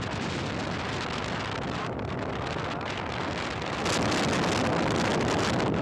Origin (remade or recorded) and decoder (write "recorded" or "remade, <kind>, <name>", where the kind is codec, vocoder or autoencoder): recorded